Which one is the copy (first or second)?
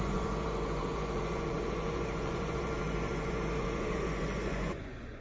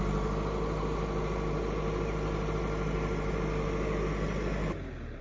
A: first